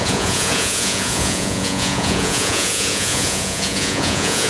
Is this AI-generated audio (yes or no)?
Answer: yes